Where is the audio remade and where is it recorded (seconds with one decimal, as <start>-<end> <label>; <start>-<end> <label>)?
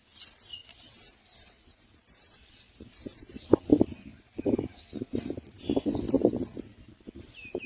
0.0-0.6 recorded; 0.6-1.5 remade; 1.5-2.3 recorded; 2.3-3.3 remade; 3.3-4.1 recorded; 4.1-5.3 remade; 5.3-7.7 recorded